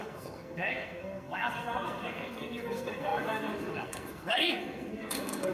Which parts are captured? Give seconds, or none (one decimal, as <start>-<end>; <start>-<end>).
none